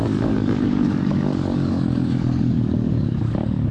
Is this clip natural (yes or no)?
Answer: no